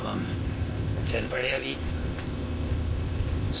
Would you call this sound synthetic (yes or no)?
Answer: yes